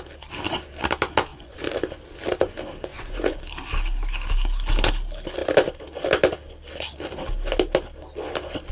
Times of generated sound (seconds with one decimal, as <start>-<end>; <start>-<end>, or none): 1.3-1.8; 2.9-3.4